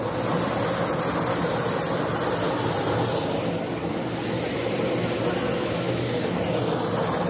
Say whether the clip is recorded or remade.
recorded